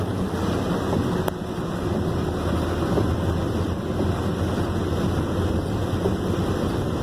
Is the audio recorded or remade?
recorded